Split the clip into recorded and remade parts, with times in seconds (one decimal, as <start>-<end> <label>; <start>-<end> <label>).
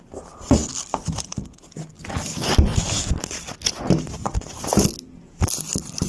0.0-6.1 recorded